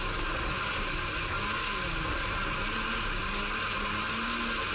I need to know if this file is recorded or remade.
recorded